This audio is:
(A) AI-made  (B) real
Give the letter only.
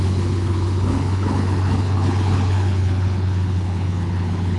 A